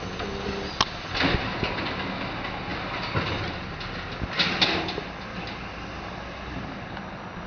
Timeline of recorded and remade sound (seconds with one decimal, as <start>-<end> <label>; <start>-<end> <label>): 0.0-7.5 recorded